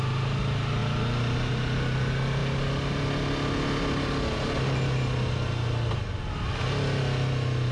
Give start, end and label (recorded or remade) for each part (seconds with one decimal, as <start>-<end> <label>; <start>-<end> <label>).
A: 0.0-7.7 recorded